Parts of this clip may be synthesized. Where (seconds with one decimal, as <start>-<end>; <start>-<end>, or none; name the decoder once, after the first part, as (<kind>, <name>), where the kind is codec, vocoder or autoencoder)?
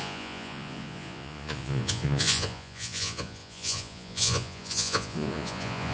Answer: 0.0-5.9 (vocoder, Vocos)